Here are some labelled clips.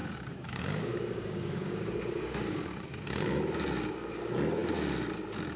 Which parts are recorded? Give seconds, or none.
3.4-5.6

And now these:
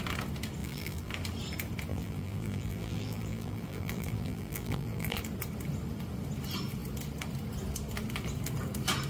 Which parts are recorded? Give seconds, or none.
0.0-0.6; 1.1-1.9; 5.2-9.1

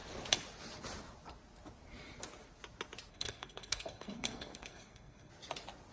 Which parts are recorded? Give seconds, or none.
0.0-3.1; 5.3-5.9